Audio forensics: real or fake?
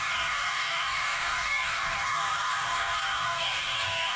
fake